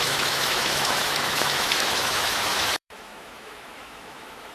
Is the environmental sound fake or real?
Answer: fake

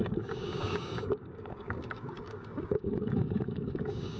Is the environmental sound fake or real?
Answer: fake